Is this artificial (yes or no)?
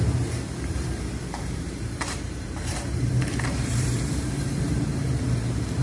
yes